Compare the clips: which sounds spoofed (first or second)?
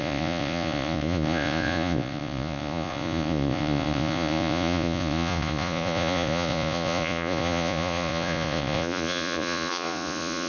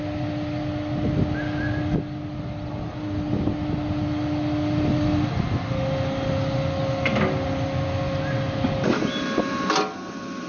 first